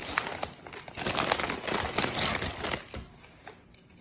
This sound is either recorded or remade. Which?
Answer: recorded